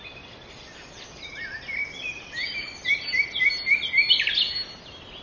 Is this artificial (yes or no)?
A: no